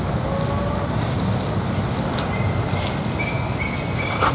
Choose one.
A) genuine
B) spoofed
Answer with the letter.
A